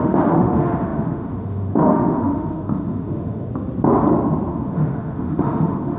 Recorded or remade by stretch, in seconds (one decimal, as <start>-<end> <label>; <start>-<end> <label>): 0.0-3.5 remade; 3.5-4.5 recorded; 4.5-6.0 remade